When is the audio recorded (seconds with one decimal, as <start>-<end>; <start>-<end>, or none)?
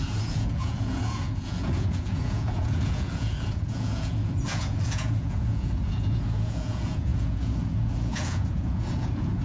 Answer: none